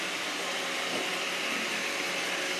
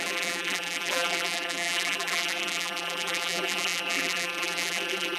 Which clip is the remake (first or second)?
second